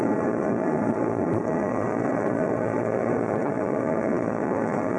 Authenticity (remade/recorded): remade